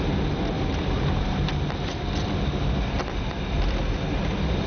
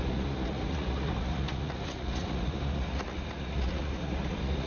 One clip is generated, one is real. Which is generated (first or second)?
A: second